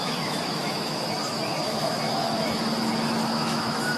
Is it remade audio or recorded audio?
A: remade